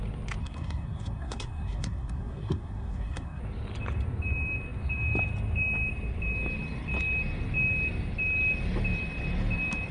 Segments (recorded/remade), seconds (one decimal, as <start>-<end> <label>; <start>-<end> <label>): 0.0-0.4 recorded; 0.4-3.4 remade; 3.4-9.9 recorded